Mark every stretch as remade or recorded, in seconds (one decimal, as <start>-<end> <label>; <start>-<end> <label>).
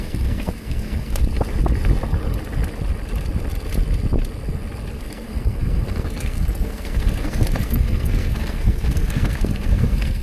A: 0.0-1.2 remade; 1.2-4.9 recorded; 4.9-10.2 remade